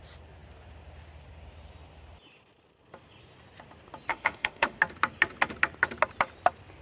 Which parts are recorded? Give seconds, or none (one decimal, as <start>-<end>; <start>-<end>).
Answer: 0.0-4.1; 4.8-6.8